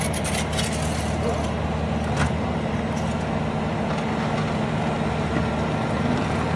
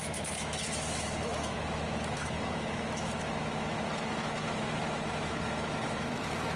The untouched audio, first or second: first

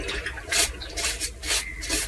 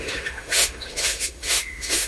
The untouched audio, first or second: first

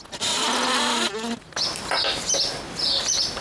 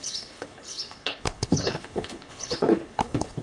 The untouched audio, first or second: first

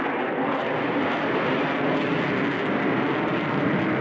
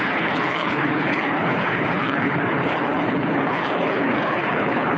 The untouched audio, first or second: first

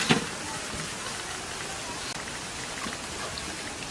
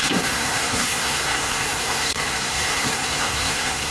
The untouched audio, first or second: first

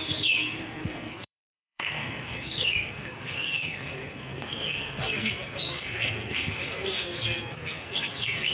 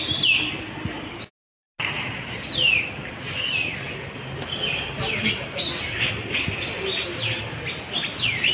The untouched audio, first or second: second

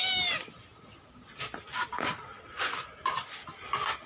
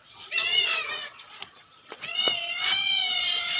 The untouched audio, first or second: first